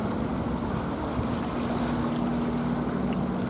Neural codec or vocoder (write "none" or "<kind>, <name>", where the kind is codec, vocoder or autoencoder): none